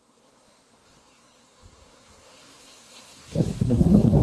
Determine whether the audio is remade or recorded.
remade